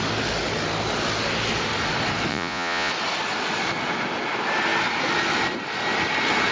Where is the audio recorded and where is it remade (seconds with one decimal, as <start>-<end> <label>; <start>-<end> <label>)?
0.0-2.3 recorded; 2.3-2.9 remade; 2.9-6.5 recorded